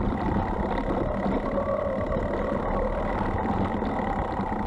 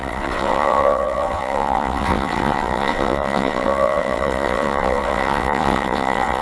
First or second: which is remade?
second